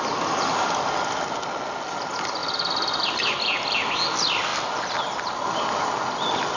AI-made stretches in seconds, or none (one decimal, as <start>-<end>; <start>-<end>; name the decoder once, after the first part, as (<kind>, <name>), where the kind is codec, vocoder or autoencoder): none